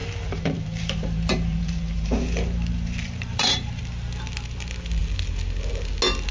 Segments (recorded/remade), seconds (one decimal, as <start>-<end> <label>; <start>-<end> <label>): 0.0-3.8 remade; 3.8-6.3 recorded